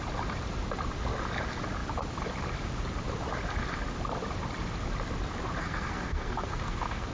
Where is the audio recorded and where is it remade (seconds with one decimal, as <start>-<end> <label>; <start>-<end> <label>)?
0.0-5.6 recorded; 5.6-7.1 remade